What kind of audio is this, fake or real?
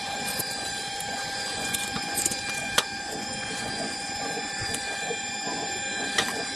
fake